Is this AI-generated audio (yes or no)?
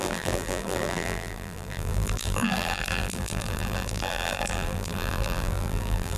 yes